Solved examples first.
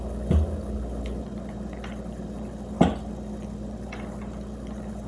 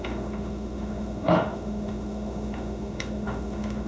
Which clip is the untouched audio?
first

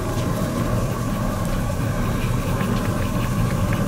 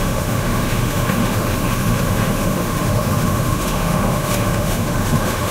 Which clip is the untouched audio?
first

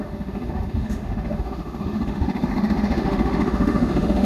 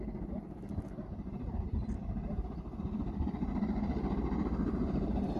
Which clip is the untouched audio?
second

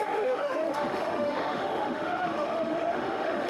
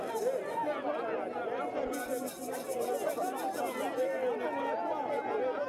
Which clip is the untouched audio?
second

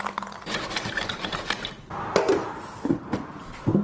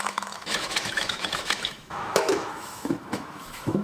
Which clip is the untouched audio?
first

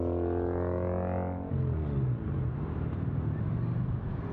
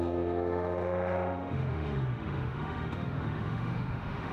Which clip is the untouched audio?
first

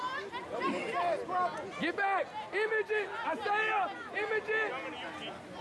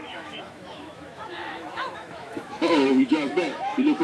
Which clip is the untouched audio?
first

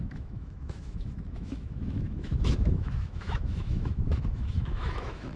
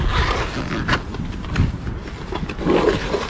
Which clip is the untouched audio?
second